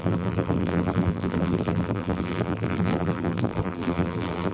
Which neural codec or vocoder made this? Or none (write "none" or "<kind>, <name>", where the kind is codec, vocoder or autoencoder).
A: vocoder, BigVGAN v2